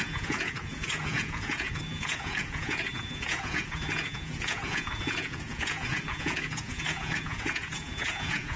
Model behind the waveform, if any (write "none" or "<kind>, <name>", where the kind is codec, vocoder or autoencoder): vocoder, Vocos